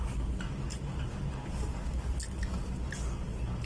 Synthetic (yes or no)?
no